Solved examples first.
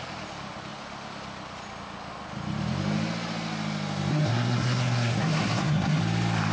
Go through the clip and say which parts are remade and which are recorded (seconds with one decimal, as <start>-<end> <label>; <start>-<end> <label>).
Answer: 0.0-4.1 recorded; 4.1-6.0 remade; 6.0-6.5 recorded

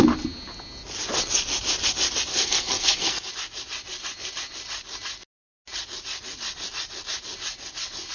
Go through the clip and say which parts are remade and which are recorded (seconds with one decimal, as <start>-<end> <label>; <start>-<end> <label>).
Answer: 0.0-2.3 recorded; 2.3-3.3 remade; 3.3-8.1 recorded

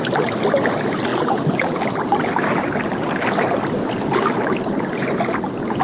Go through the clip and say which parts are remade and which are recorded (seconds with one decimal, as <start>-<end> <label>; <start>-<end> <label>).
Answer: 0.0-5.8 recorded

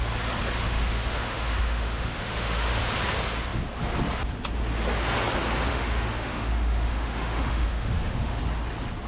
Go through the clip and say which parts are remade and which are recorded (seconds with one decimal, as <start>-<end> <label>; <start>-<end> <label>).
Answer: 0.0-0.6 recorded; 0.6-2.8 remade; 2.8-5.7 recorded; 5.7-8.4 remade; 8.4-9.1 recorded

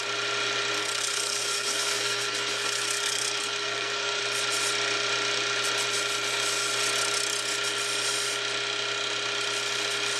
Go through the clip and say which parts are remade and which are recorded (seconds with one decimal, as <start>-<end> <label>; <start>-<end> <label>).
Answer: 0.0-0.8 recorded; 0.8-4.2 remade; 4.2-10.2 recorded